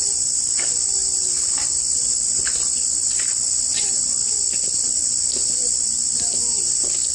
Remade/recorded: recorded